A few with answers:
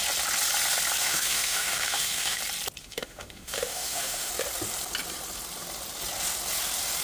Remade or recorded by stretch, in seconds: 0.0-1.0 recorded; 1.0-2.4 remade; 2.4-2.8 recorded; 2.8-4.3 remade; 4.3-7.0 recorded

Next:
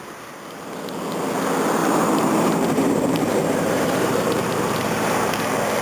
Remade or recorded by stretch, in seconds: 0.0-1.8 recorded; 1.8-5.3 remade; 5.3-5.8 recorded

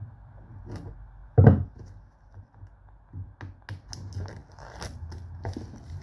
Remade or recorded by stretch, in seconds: 0.0-6.0 recorded

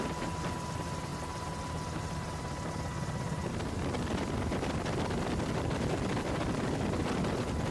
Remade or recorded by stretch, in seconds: 0.0-7.7 recorded

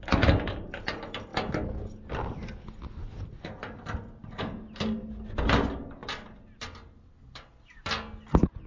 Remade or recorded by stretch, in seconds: 0.0-8.7 recorded

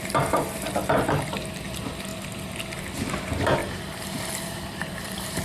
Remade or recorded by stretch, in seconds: 0.0-3.6 recorded; 3.6-5.4 remade

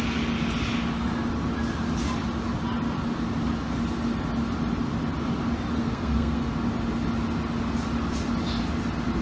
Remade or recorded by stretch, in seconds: 0.0-5.8 recorded; 5.8-6.5 remade; 6.5-9.2 recorded

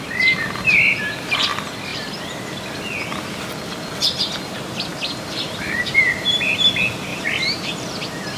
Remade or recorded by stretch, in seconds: 0.0-4.9 recorded; 4.9-6.6 remade; 6.6-7.1 recorded; 7.1-7.7 remade; 7.7-8.4 recorded